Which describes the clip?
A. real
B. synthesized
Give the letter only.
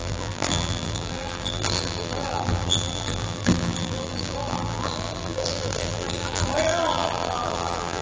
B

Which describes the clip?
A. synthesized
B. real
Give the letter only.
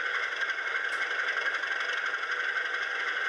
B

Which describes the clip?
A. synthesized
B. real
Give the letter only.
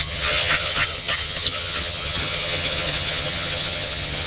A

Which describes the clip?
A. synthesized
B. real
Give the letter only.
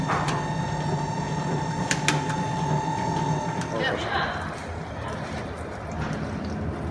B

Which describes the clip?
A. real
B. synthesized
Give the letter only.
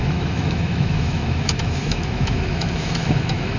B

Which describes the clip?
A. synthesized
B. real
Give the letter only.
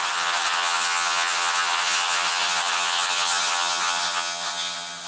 A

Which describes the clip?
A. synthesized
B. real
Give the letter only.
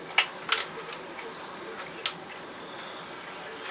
B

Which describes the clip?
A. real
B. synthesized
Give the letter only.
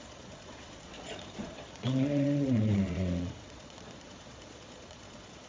B